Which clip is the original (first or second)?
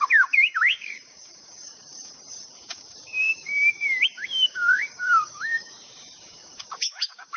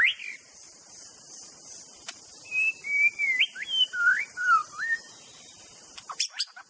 second